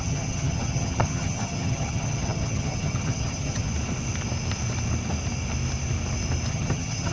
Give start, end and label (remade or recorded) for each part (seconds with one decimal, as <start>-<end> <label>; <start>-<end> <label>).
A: 0.0-3.7 remade; 3.7-6.5 recorded; 6.5-7.1 remade